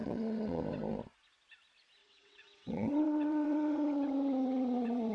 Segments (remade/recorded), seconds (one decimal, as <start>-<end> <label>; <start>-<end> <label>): 0.0-0.6 remade; 0.6-2.0 recorded; 2.0-5.1 remade